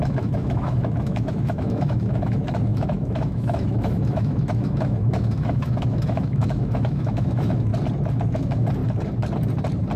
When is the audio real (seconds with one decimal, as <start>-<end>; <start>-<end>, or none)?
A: 7.7-8.3; 8.8-10.0